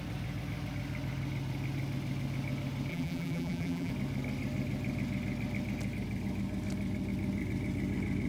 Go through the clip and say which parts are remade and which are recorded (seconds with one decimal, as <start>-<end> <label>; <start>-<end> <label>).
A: 0.0-2.9 recorded; 2.9-3.9 remade; 3.9-8.3 recorded